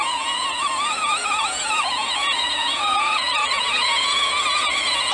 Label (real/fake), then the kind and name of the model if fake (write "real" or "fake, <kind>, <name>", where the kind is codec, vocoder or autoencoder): fake, vocoder, Vocos